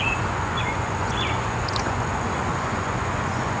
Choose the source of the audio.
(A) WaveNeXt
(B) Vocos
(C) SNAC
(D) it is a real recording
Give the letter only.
B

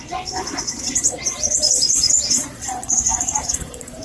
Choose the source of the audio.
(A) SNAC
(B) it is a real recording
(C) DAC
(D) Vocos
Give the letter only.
D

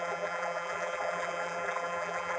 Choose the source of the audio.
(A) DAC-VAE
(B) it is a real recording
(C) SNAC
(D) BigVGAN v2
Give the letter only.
D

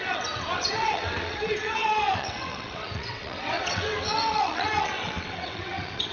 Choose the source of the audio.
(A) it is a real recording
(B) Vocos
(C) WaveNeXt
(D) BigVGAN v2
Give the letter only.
C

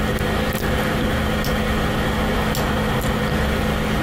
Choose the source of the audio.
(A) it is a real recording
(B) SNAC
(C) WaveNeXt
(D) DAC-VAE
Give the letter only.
A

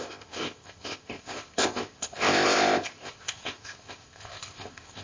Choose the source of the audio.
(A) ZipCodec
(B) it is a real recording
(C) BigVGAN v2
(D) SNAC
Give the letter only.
A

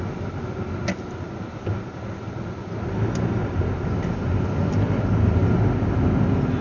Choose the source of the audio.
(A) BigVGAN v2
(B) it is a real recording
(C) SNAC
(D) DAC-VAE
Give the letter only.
B